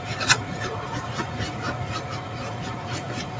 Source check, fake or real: fake